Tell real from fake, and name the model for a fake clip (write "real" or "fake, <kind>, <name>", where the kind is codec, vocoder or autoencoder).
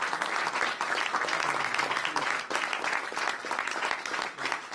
real